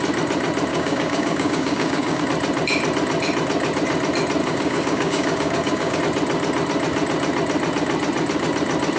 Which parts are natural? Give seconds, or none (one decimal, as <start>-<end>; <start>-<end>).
0.0-0.7; 2.2-4.4; 6.0-9.0